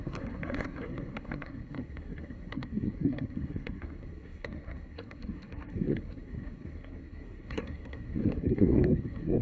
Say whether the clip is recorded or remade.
remade